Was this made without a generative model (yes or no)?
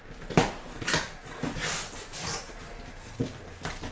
yes